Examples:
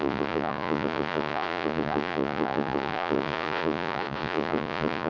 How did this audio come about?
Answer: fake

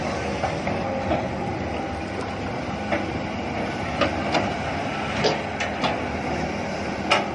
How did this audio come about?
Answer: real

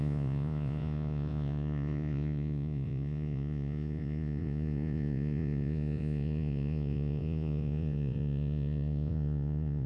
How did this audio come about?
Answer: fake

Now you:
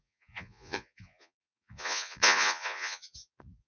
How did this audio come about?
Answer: fake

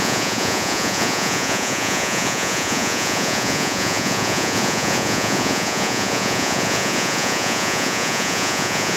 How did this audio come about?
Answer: fake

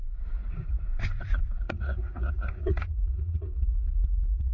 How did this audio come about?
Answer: fake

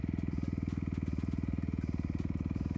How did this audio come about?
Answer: real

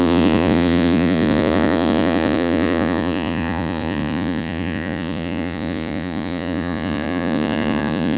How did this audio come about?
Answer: fake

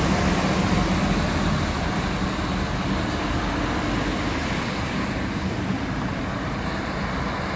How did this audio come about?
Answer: real